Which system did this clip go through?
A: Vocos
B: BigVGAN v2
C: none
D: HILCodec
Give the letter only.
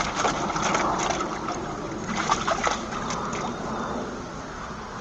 C